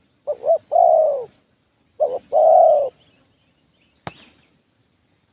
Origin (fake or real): real